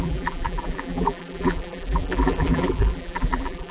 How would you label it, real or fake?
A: fake